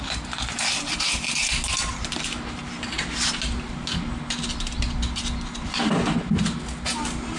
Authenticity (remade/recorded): recorded